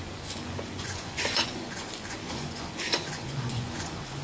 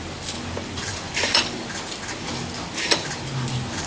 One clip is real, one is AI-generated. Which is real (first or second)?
second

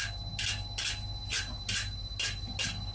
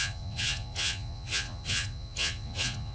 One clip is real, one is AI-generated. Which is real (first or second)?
first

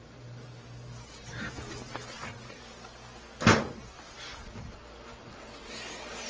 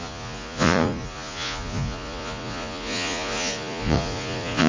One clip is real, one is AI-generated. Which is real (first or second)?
first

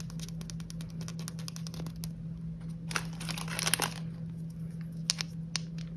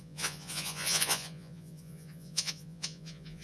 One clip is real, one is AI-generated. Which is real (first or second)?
first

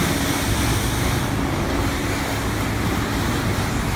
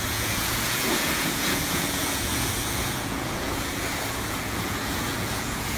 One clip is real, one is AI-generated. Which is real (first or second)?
first